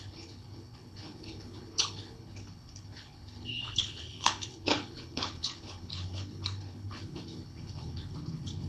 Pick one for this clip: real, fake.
fake